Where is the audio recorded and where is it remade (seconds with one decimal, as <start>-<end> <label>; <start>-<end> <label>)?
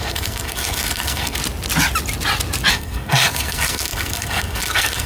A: 0.0-1.4 remade; 1.4-2.7 recorded; 2.7-5.1 remade